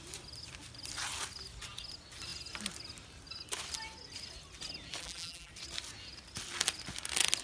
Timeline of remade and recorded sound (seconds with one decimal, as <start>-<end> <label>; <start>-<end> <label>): 0.0-5.0 recorded; 5.0-5.5 remade; 5.5-7.4 recorded